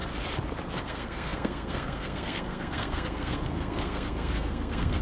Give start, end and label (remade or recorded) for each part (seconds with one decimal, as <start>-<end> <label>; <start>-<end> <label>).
0.0-0.8 recorded; 0.8-5.0 remade